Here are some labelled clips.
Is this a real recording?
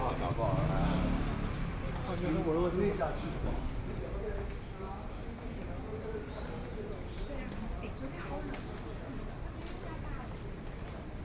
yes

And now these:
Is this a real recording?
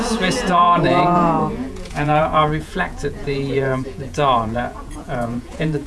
no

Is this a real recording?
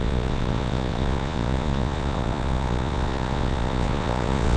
no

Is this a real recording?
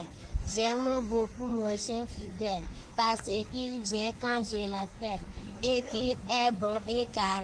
no